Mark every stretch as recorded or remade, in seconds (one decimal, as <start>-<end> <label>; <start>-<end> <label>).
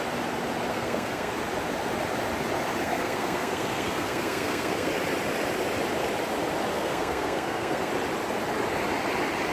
0.0-0.7 recorded; 0.7-1.3 remade; 1.3-2.8 recorded; 2.8-4.9 remade; 4.9-6.7 recorded; 6.7-7.9 remade; 7.9-9.5 recorded